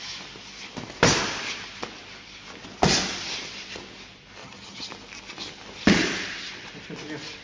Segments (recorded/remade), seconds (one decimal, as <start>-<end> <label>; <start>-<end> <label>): 0.0-4.4 recorded; 4.4-4.9 remade; 4.9-7.4 recorded